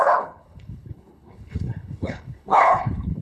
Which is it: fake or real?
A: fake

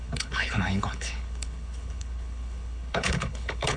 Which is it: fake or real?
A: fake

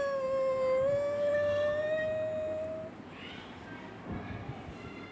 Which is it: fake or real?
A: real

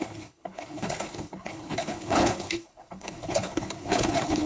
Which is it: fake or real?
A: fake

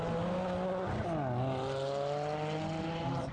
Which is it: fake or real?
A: real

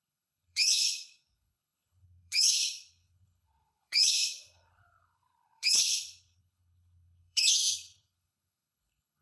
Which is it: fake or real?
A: fake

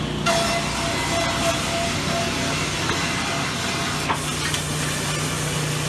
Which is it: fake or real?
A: real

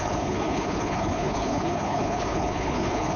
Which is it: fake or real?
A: fake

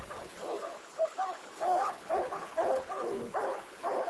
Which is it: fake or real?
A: fake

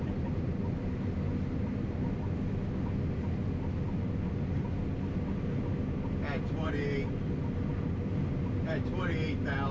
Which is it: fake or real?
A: real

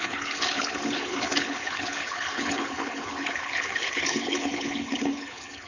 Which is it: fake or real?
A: fake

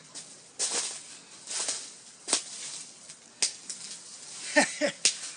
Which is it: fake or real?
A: real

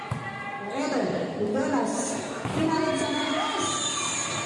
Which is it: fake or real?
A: real